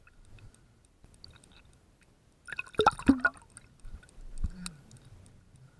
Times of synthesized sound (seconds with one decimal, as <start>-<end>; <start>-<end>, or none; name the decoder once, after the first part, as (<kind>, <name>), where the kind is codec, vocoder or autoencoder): none